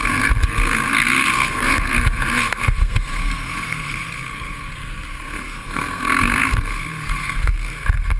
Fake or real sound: fake